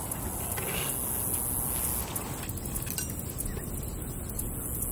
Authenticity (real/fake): real